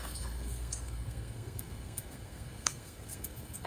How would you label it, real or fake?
fake